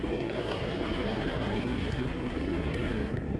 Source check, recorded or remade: remade